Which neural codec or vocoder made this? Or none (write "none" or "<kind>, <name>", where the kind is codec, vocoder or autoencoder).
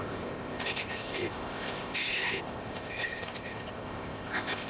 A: codec, ZipCodec